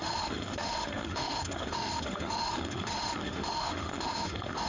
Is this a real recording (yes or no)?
no